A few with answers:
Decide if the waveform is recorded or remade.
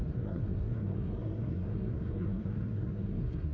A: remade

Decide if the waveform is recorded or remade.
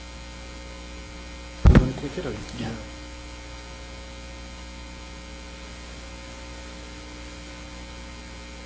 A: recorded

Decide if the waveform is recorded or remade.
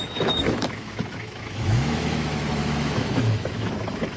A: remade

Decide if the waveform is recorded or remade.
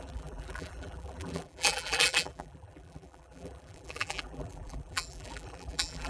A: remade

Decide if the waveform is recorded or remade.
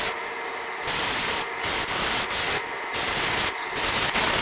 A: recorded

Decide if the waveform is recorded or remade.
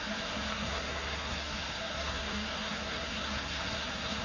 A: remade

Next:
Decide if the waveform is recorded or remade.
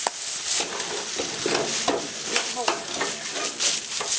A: recorded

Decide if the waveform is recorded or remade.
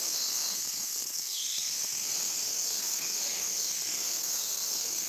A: remade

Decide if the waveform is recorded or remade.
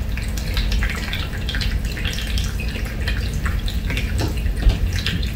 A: recorded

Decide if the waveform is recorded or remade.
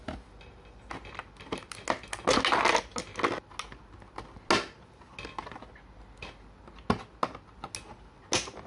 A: recorded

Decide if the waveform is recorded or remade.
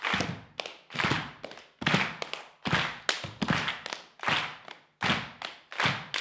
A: recorded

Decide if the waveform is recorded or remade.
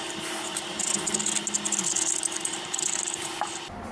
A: recorded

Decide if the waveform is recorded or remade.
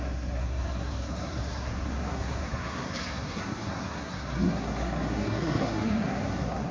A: remade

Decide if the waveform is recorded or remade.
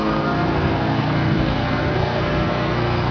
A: remade